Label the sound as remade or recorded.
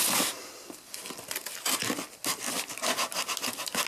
recorded